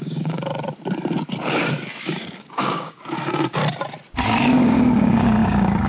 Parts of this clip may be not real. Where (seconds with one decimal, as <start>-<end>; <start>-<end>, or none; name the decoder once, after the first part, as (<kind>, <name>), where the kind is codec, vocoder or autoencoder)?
0.0-0.5 (codec, DAC); 2.0-3.6; 4.4-5.9